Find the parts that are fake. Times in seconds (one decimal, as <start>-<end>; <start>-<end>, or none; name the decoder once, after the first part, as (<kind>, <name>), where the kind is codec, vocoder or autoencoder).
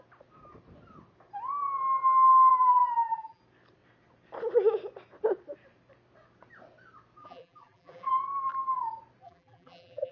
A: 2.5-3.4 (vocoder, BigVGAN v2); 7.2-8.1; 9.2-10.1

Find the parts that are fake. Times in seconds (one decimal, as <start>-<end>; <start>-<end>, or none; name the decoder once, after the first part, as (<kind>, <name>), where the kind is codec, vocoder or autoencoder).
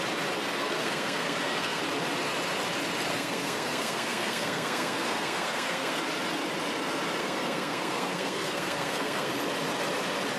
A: 0.4-1.8 (codec, SNAC); 3.1-6.0; 7.2-9.3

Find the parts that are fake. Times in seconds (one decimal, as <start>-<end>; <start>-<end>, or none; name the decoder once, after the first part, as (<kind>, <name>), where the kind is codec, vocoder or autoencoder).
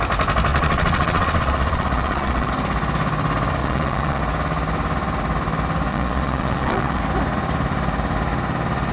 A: 0.5-2.5 (vocoder, Vocos); 3.6-4.2; 5.9-7.0